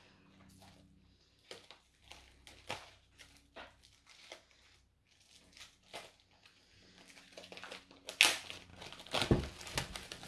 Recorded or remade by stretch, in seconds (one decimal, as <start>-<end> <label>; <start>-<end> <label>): 0.0-10.3 recorded

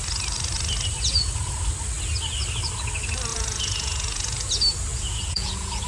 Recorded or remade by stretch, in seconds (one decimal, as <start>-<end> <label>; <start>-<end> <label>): 0.0-3.3 recorded; 3.3-4.5 remade; 4.5-4.9 recorded; 4.9-5.9 remade